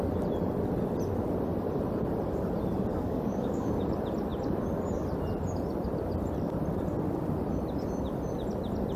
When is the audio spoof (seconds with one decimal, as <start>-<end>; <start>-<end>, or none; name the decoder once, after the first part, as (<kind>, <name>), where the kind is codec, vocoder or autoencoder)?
2.9-3.7 (codec, DAC)